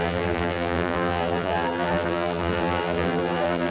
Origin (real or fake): fake